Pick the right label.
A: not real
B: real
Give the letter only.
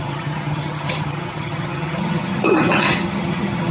A